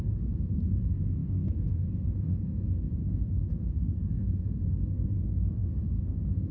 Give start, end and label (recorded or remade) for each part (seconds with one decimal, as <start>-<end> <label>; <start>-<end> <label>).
0.0-6.5 remade